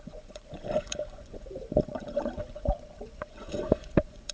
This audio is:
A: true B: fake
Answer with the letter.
B